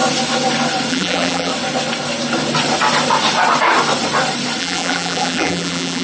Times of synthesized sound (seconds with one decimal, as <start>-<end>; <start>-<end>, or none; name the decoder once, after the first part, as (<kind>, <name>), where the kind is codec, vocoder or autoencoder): 0.9-1.5 (vocoder, BigVGAN v2); 4.6-6.0

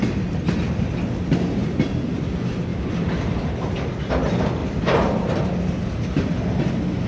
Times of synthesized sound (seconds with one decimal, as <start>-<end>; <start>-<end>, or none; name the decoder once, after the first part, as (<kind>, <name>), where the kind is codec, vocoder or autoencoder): 1.6-2.2 (vocoder, BigVGAN v2)